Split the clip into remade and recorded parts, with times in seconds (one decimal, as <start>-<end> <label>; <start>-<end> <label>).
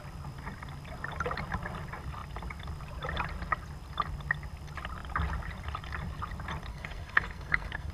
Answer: 0.0-6.7 recorded; 6.7-7.9 remade